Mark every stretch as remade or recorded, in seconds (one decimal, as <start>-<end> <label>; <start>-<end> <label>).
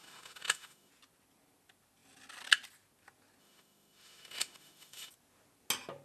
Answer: 0.0-0.9 remade; 0.9-3.4 recorded; 3.4-5.1 remade; 5.1-6.0 recorded